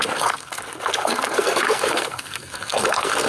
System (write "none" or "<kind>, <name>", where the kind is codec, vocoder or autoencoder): codec, SNAC